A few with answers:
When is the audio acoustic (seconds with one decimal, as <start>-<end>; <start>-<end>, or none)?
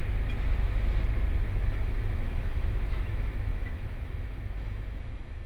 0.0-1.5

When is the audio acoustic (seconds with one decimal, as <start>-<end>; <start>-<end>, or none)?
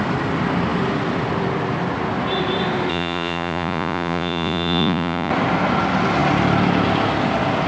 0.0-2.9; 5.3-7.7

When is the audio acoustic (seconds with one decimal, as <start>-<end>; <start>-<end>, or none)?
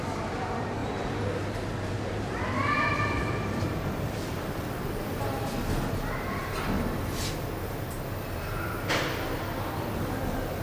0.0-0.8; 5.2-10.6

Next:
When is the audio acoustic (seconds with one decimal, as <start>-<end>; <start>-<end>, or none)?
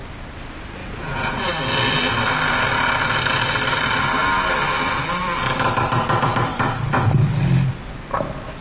0.0-0.8; 1.5-8.6